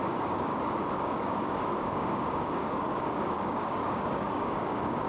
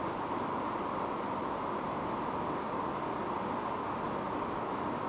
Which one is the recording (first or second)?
second